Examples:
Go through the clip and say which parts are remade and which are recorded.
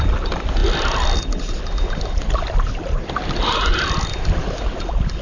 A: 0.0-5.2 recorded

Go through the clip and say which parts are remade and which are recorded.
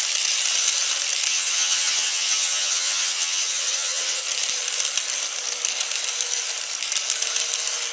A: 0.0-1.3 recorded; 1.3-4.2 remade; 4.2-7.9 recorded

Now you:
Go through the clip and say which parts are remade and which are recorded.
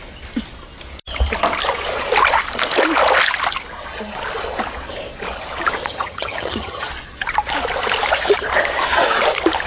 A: 0.0-5.9 recorded; 5.9-6.9 remade; 6.9-9.7 recorded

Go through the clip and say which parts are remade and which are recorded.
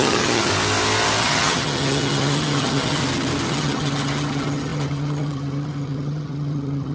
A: 0.0-0.5 remade; 0.5-1.2 recorded; 1.2-3.0 remade; 3.0-3.5 recorded; 3.5-6.9 remade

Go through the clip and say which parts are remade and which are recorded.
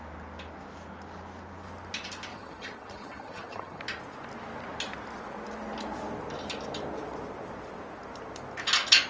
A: 0.0-2.3 recorded; 2.3-3.8 remade; 3.8-9.1 recorded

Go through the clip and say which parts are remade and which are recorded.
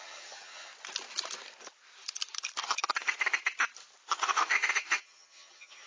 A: 0.0-0.7 remade; 0.7-4.2 recorded; 4.2-5.9 remade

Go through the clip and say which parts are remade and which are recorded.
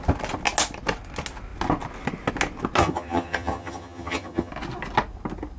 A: 0.0-2.8 recorded; 2.8-4.5 remade; 4.5-5.6 recorded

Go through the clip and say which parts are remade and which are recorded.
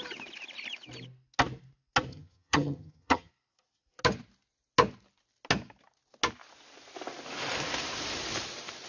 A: 0.0-2.1 recorded; 2.1-3.3 remade; 3.3-8.9 recorded